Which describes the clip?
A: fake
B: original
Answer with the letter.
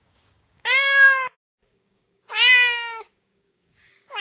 A